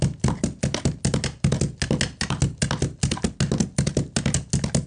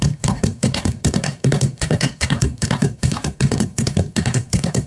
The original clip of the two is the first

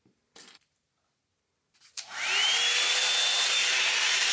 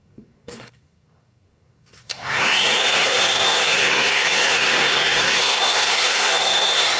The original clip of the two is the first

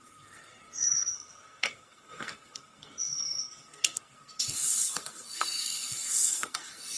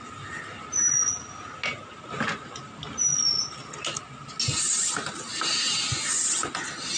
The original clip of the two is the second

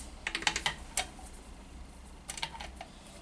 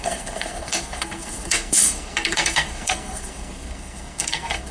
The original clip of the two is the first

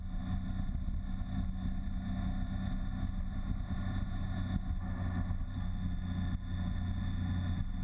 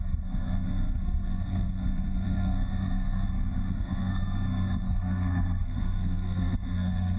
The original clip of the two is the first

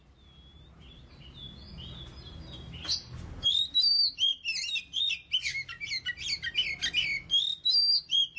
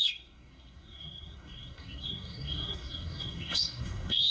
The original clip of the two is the first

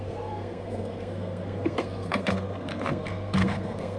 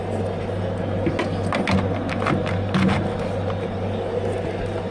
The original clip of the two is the second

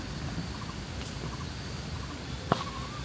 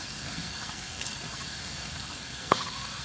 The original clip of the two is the first